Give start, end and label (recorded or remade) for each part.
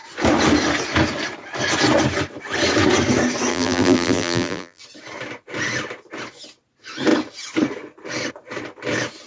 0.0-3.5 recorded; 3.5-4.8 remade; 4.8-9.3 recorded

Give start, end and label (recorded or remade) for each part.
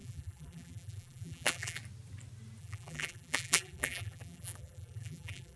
0.0-1.8 remade; 1.8-2.6 recorded; 2.6-5.6 remade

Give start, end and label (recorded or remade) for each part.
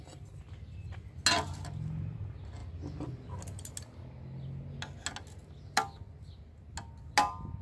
0.0-7.6 recorded